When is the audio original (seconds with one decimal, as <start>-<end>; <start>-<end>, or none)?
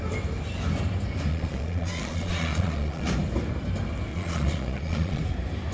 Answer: 0.0-1.3; 3.1-4.1; 5.2-5.7